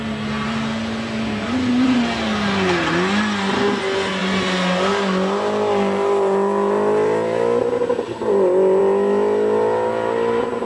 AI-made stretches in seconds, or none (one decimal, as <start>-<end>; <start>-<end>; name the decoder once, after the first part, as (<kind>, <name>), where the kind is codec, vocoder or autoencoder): none